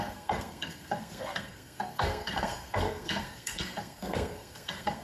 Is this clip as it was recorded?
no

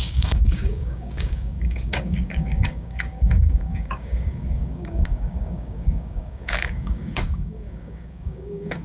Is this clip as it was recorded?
no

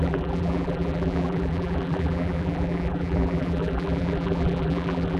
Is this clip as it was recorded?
no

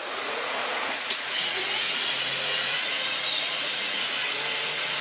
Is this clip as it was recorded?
no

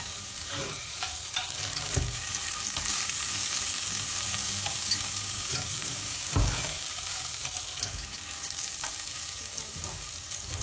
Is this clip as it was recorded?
no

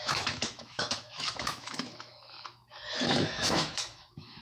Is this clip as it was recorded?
no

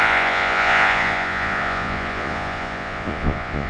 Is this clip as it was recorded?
no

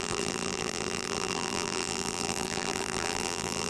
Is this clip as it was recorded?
no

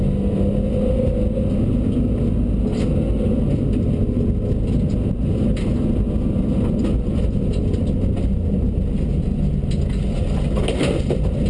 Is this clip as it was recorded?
yes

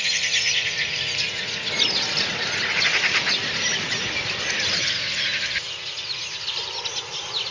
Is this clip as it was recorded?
yes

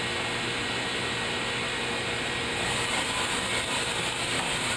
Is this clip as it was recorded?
yes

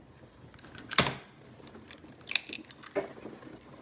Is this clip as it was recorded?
yes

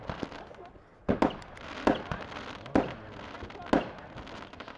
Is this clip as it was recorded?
yes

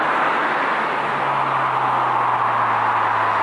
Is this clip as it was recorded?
yes